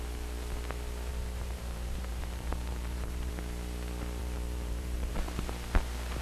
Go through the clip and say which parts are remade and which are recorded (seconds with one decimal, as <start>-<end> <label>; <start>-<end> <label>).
0.0-1.1 recorded; 1.1-3.3 remade; 3.3-4.2 recorded; 4.2-5.1 remade; 5.1-6.2 recorded